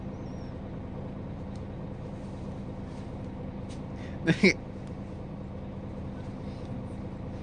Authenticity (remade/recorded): recorded